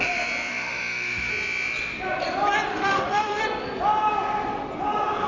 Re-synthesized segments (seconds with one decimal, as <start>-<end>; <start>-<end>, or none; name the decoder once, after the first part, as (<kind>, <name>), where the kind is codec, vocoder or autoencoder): 0.5-1.3 (autoencoder, DAC-VAE); 2.7-3.4